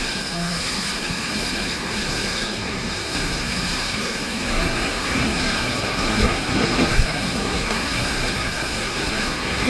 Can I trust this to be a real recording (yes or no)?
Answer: no